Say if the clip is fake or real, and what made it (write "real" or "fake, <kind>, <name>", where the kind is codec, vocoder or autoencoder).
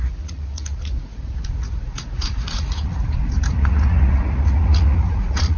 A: fake, vocoder, Vocos